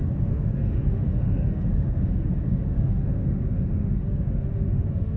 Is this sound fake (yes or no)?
yes